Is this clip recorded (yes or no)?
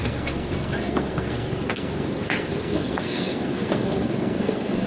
no